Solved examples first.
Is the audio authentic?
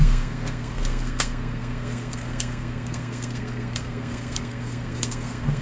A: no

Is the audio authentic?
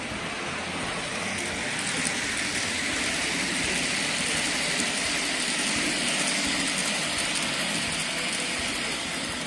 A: yes